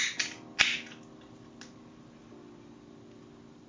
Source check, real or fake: real